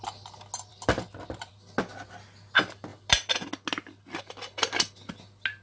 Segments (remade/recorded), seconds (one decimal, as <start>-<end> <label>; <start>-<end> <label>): 0.0-5.6 recorded